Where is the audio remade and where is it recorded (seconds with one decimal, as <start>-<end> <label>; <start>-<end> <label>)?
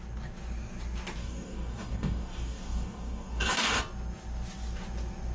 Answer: 0.0-1.2 recorded; 1.2-3.8 remade; 3.8-5.3 recorded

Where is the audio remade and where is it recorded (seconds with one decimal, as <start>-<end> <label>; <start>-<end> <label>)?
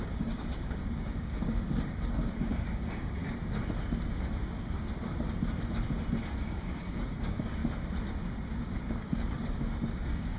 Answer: 0.0-3.2 remade; 3.2-6.4 recorded; 6.4-7.6 remade; 7.6-8.6 recorded; 8.6-10.4 remade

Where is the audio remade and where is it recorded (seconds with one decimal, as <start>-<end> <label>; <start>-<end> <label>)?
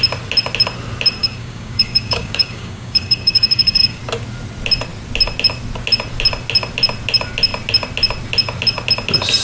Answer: 0.0-1.2 recorded; 1.2-4.0 remade; 4.0-9.4 recorded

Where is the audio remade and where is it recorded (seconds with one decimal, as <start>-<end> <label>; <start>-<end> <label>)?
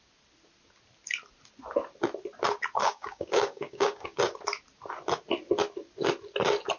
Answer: 0.0-2.8 recorded; 2.8-4.2 remade; 4.2-6.8 recorded